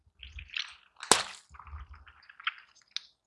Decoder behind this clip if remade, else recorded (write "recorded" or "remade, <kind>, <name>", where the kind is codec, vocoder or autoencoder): recorded